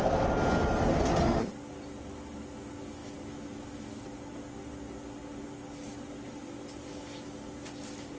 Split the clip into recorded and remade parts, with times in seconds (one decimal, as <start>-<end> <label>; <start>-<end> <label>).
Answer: 0.0-8.2 recorded